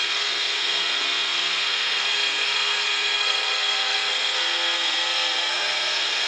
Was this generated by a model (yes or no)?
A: yes